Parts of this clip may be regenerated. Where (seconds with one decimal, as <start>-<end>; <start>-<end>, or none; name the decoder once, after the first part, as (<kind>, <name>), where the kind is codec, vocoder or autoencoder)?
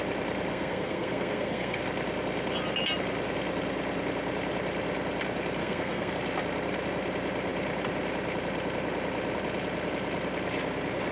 0.5-1.8 (codec, SNAC); 5.6-6.1